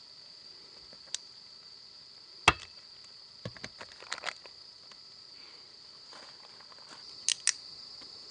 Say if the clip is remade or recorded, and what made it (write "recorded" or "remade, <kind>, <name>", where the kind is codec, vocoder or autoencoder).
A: recorded